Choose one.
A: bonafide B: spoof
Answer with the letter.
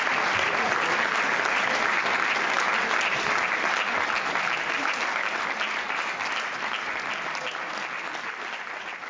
A